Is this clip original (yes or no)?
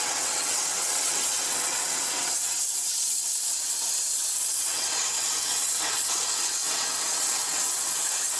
no